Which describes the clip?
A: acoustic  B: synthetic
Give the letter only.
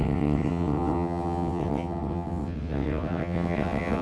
B